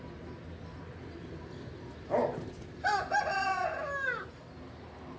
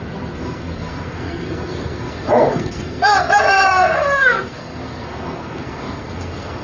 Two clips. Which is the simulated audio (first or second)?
second